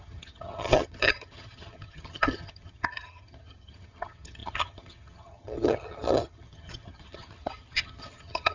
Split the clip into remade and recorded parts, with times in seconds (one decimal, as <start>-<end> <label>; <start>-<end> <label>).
0.0-8.5 remade